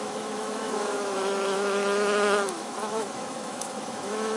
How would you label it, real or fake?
fake